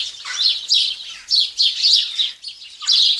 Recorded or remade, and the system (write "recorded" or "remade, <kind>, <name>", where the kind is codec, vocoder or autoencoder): recorded